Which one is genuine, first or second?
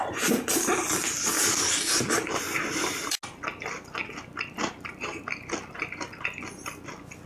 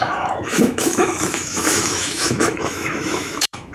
first